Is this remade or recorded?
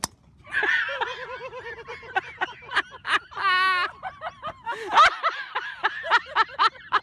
recorded